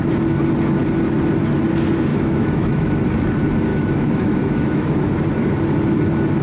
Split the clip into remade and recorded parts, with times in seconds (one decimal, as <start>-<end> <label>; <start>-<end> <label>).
0.0-2.1 recorded; 2.1-3.0 remade; 3.0-3.7 recorded; 3.7-5.1 remade; 5.1-6.4 recorded